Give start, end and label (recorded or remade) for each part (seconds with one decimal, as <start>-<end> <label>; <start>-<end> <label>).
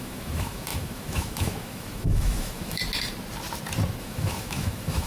0.0-2.8 remade; 2.8-4.0 recorded; 4.0-5.1 remade